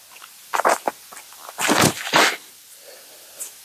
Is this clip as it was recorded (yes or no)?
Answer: yes